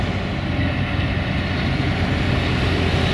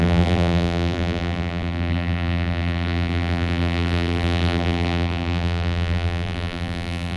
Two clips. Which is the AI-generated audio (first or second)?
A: second